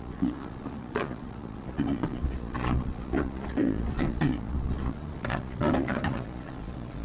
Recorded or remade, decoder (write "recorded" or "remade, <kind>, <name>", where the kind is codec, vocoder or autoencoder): remade, vocoder, Vocos